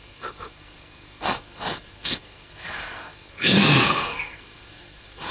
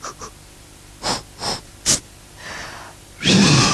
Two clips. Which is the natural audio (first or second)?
second